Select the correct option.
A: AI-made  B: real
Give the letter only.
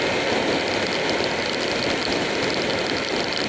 B